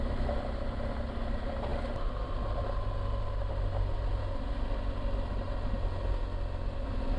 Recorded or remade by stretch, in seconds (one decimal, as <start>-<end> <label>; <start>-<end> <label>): 0.0-7.2 recorded